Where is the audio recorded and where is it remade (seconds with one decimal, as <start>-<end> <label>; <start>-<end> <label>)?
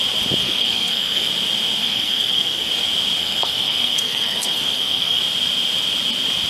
0.0-0.4 recorded; 0.4-1.3 remade; 1.3-1.8 recorded; 1.8-2.7 remade; 2.7-3.2 recorded; 3.2-5.2 remade; 5.2-6.5 recorded